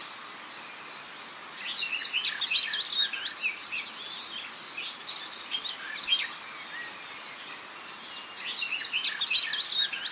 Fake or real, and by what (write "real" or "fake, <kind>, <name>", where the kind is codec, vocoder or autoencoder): real